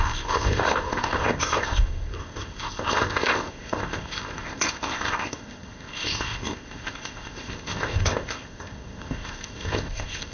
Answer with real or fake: fake